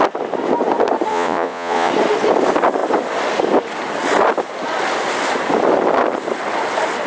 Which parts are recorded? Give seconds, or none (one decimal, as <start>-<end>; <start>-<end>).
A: 0.0-1.1; 1.9-7.1